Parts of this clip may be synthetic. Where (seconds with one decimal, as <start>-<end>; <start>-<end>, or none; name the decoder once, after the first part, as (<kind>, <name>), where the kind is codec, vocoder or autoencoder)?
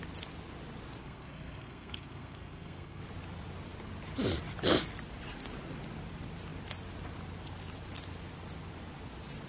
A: 1.0-3.0 (codec, SNAC)